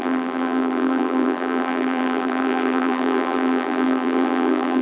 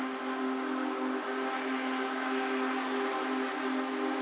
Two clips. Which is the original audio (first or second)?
second